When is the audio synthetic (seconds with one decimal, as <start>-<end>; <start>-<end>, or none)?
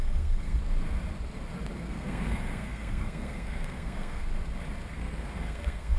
0.0-0.6; 1.9-4.2; 4.9-6.0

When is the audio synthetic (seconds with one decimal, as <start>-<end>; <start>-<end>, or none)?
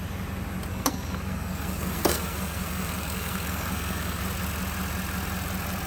0.7-4.2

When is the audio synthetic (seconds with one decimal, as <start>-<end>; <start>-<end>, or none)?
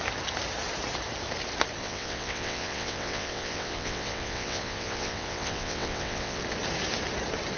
1.8-6.4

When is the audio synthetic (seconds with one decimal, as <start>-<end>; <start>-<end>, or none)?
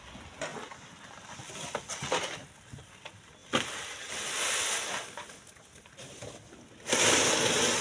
none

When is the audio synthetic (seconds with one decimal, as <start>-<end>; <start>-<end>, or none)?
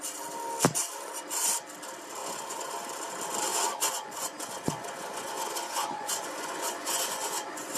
2.2-2.7; 3.5-7.8